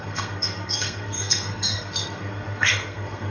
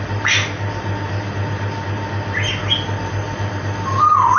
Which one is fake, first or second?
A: first